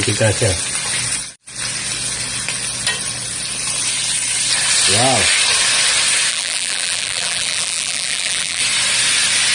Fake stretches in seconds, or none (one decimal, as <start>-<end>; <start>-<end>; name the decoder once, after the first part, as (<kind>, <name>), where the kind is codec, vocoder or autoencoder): 6.3-8.6 (vocoder, BigVGAN v2)